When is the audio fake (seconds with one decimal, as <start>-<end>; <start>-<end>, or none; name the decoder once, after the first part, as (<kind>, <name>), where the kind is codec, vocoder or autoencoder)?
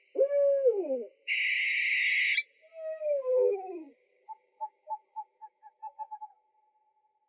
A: 2.7-6.5 (codec, DAC)